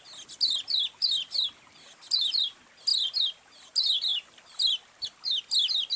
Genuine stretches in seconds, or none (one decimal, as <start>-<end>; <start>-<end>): 0.0-6.0